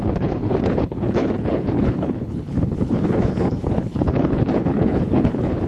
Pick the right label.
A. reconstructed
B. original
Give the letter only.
A